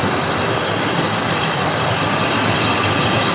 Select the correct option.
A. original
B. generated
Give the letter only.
A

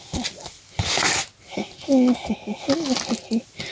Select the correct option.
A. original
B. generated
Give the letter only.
A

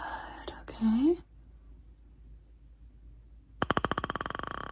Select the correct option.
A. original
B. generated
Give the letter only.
A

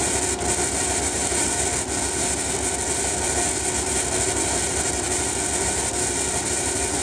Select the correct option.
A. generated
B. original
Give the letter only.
B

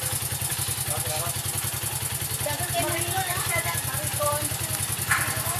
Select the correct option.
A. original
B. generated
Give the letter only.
A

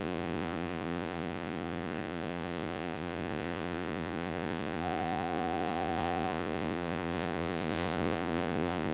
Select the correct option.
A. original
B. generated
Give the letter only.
B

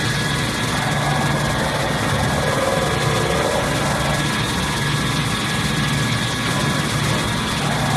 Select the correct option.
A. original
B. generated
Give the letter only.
A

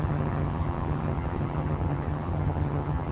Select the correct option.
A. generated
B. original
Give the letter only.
A